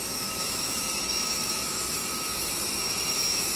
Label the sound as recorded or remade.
remade